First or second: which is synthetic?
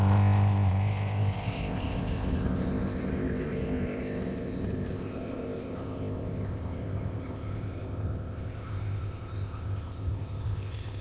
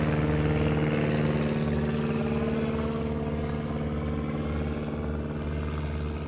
first